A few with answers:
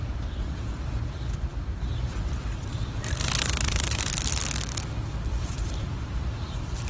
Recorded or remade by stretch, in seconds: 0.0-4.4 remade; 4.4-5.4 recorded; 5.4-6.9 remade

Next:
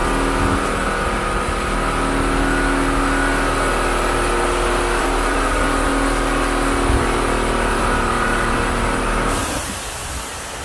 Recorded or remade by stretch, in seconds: 0.0-5.0 recorded; 5.0-5.9 remade; 5.9-7.7 recorded; 7.7-10.6 remade

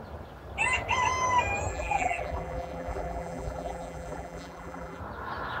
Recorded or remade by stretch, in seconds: 0.0-1.7 recorded; 1.7-5.0 remade; 5.0-5.6 recorded

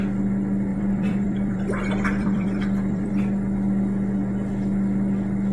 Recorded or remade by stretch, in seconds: 0.0-0.7 recorded; 0.7-3.1 remade; 3.1-5.5 recorded

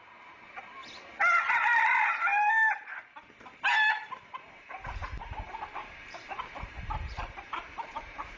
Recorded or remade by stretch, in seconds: 0.0-0.8 remade; 0.8-1.5 recorded; 1.5-2.3 remade; 2.3-4.2 recorded; 4.2-8.4 remade